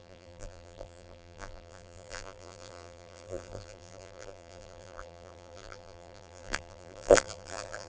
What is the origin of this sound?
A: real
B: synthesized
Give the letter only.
B